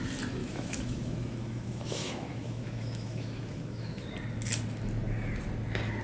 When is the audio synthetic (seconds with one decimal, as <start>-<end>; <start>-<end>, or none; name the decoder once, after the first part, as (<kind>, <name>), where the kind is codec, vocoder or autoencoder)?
0.4-4.0 (autoencoder, DAC-VAE)